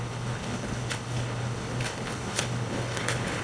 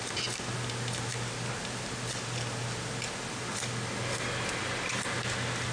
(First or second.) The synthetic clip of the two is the first